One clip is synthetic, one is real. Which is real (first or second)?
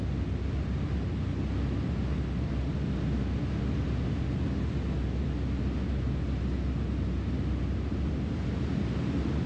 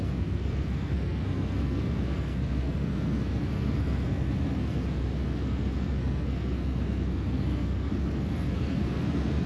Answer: first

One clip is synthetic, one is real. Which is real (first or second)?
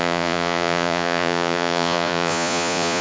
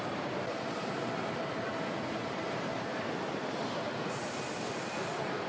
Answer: second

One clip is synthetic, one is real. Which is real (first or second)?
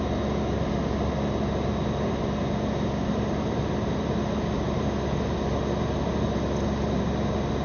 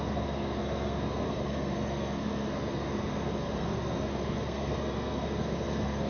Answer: first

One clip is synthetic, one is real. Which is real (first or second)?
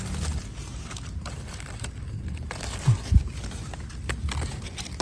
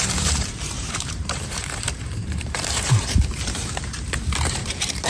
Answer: first